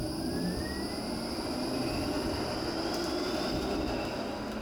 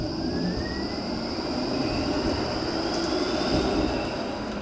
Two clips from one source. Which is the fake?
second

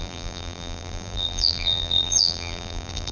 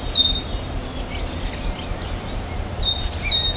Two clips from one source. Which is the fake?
first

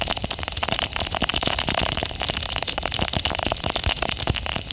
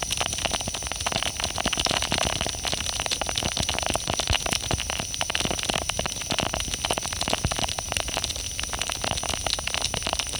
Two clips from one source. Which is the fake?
first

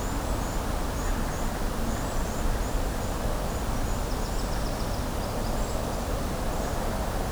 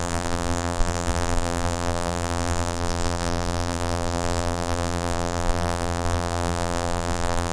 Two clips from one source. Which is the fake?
second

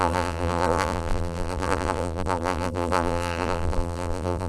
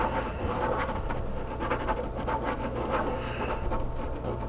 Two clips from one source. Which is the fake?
first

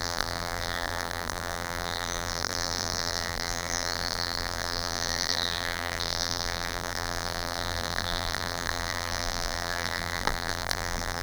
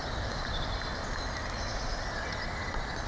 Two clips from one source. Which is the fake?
first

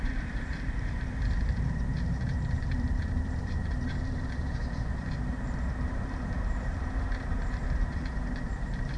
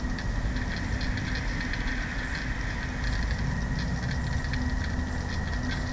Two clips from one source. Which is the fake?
first